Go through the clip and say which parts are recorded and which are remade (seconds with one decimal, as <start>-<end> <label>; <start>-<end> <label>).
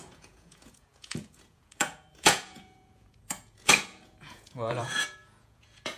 0.0-6.0 remade